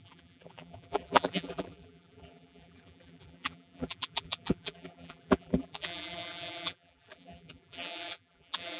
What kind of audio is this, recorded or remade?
remade